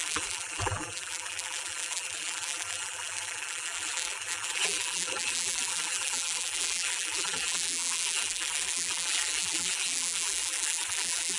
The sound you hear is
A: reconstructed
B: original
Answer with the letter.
A